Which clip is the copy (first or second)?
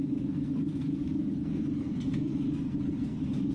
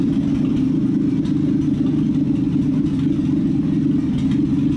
first